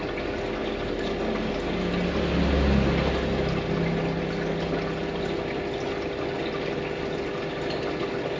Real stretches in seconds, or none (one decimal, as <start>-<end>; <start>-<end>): 0.0-8.4